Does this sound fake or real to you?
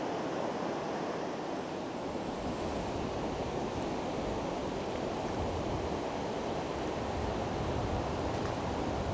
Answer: real